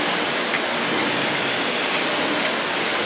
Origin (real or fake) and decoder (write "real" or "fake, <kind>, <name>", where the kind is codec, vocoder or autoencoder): real